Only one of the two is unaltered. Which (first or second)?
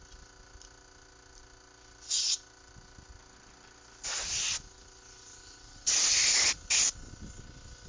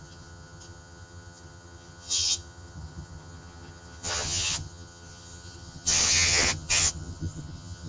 first